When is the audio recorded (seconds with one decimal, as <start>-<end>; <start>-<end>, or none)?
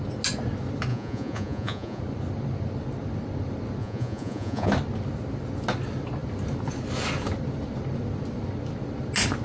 0.0-0.9; 2.0-3.8; 4.7-9.4